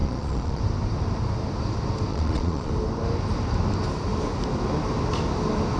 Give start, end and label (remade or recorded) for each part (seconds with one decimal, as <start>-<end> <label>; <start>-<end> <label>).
0.0-0.6 remade; 0.6-2.1 recorded; 2.1-2.7 remade; 2.7-5.8 recorded

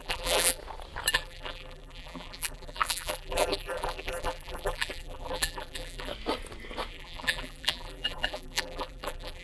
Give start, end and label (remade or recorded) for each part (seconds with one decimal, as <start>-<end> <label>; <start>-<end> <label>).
0.0-0.6 remade; 0.6-1.1 recorded; 1.1-6.1 remade; 6.1-6.9 recorded; 6.9-9.4 remade

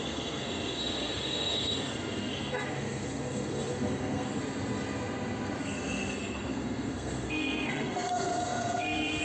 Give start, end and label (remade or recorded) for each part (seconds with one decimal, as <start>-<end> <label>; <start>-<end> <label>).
0.0-4.4 remade; 4.4-5.6 recorded; 5.6-9.2 remade

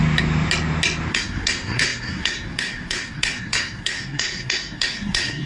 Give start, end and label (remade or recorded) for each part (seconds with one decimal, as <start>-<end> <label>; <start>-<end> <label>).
0.0-1.1 recorded; 1.1-5.5 remade

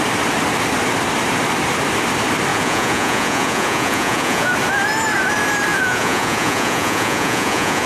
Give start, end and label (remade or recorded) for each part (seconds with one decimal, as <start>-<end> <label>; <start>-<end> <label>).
0.0-2.5 recorded; 2.5-4.5 remade; 4.5-5.7 recorded; 5.7-7.9 remade

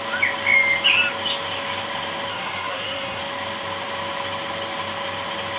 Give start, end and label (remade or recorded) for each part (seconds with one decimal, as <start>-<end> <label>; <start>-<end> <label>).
0.0-2.3 recorded; 2.3-3.2 remade; 3.2-5.6 recorded

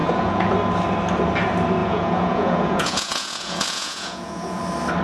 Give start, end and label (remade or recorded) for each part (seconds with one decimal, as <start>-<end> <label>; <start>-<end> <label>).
0.0-0.5 remade; 0.5-1.8 recorded; 1.8-4.6 remade; 4.6-5.0 recorded

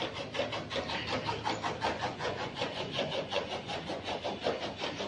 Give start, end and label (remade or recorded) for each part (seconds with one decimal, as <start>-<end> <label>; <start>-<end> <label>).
0.0-2.0 recorded; 2.0-4.2 remade; 4.2-5.1 recorded